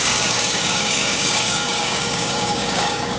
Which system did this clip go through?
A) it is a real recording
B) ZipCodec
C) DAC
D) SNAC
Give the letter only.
C